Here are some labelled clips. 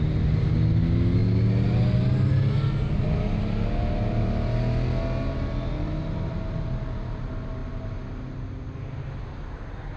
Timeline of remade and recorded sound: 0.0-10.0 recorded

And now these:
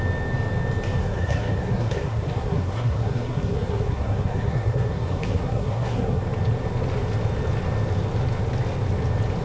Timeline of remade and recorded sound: 0.0-1.0 recorded; 1.0-6.2 remade; 6.2-9.4 recorded

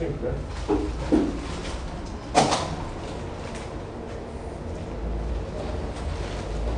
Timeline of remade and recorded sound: 0.0-6.8 recorded